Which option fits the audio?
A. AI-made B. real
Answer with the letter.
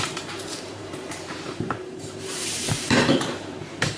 A